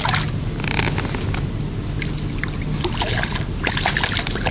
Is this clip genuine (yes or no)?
yes